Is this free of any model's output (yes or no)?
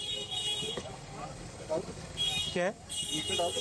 no